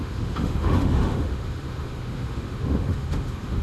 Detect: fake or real fake